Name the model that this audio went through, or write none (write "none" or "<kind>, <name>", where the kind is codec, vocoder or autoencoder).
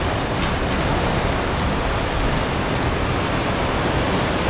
none